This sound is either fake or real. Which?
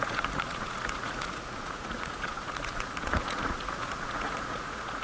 fake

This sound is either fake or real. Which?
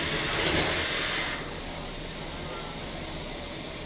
real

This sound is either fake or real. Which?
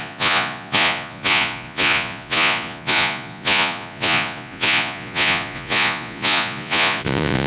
fake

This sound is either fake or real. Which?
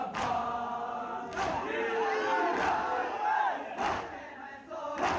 real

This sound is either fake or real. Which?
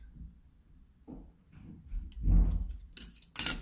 real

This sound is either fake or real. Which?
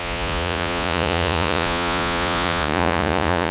fake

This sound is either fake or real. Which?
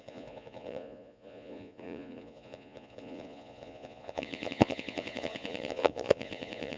fake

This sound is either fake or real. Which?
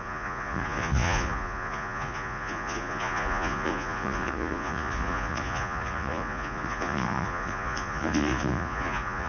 fake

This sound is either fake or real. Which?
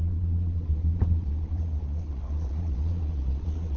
fake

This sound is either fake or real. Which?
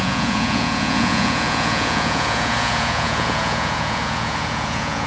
fake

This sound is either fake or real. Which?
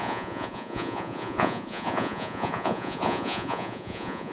fake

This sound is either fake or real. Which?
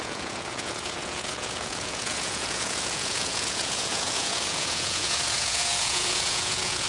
fake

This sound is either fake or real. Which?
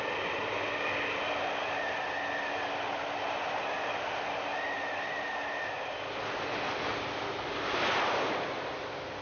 real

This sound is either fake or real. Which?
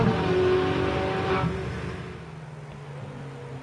real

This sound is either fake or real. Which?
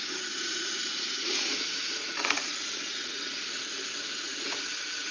fake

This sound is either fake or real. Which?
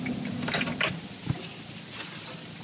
real